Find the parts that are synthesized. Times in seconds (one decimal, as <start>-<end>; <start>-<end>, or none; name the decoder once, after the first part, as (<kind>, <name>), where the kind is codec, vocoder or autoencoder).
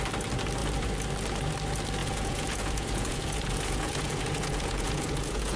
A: 2.0-5.6 (vocoder, Vocos)